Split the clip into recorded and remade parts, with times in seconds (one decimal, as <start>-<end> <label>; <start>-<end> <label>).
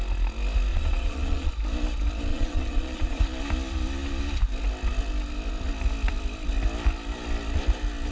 0.0-0.7 recorded; 0.7-1.5 remade; 1.5-2.3 recorded; 2.3-3.2 remade; 3.2-8.1 recorded